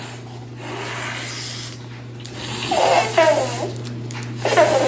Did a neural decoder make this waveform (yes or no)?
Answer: no